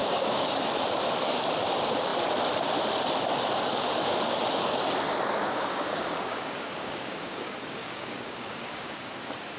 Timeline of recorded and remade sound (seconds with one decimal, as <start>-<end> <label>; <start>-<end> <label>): 0.0-0.6 remade; 0.6-5.4 recorded; 5.4-9.1 remade; 9.1-9.6 recorded